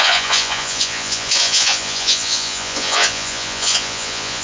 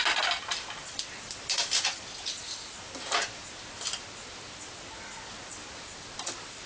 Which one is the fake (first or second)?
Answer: first